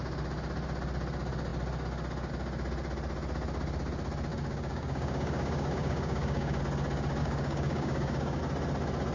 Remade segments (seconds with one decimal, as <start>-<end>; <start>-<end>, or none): 4.3-6.6; 7.2-8.4

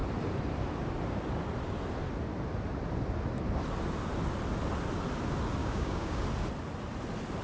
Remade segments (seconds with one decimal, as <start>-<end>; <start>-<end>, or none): 5.6-6.2

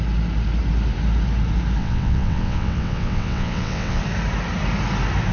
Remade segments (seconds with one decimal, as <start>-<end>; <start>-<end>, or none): 1.8-4.0

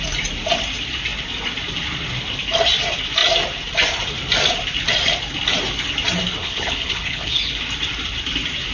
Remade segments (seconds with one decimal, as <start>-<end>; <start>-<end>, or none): 6.4-7.5

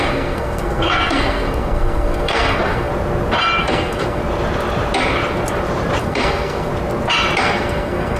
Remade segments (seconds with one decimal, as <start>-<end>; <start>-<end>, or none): 0.0-2.9; 3.6-4.2; 6.0-6.7; 7.4-8.2

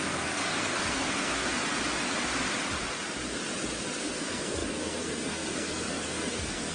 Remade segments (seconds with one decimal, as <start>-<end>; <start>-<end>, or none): 0.0-1.4; 4.0-6.7

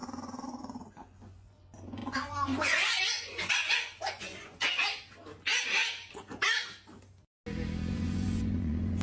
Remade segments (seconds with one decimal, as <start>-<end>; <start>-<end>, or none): 0.0-4.8; 7.9-9.0